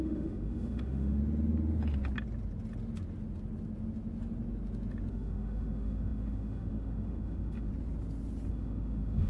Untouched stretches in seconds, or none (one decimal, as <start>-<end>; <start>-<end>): 1.2-5.1; 7.7-8.5